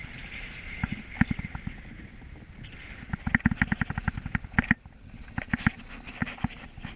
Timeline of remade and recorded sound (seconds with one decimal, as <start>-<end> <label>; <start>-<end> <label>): 0.0-7.0 recorded